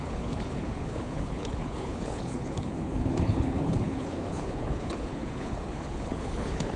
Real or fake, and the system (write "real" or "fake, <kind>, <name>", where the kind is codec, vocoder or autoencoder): fake, codec, HILCodec